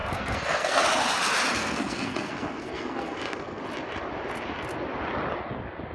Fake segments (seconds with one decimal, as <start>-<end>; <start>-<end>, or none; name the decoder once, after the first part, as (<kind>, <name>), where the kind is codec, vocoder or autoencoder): 0.0-0.8 (codec, SNAC); 1.6-3.6